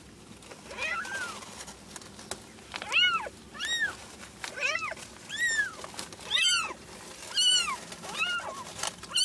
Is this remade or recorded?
recorded